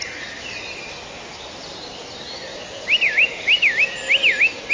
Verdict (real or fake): real